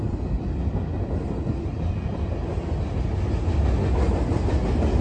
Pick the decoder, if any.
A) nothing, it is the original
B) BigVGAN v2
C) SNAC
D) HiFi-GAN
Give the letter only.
A